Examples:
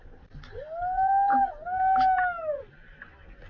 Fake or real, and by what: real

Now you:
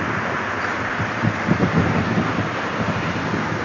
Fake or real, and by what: real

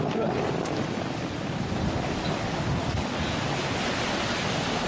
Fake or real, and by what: real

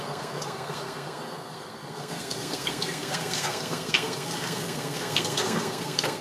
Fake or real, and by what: fake, codec, SNAC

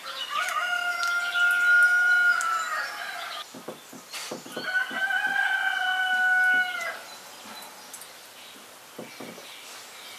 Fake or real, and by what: real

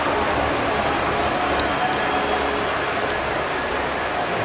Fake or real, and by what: real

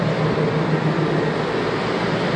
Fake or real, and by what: real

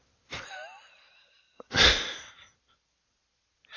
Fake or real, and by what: real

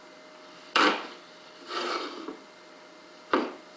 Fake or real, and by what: fake, vocoder, BigVGAN v2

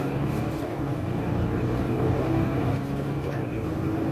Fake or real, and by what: fake, codec, DAC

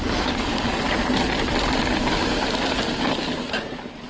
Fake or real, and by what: real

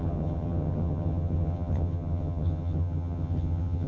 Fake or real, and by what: fake, vocoder, HiFi-GAN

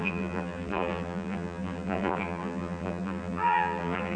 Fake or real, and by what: fake, vocoder, BigVGAN v2